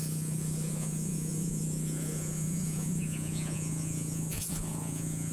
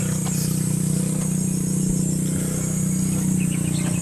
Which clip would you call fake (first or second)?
first